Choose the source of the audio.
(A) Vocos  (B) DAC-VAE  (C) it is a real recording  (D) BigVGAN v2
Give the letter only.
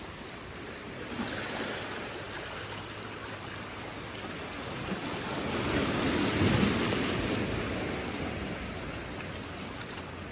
C